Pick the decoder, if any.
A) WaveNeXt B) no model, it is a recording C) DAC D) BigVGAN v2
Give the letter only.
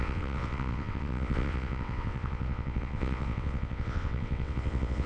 A